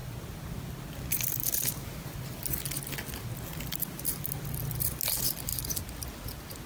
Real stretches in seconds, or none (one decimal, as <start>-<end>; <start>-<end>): 0.0-6.7